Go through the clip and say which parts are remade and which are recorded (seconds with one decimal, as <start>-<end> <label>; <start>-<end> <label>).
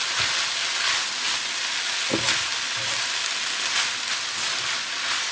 0.0-5.3 recorded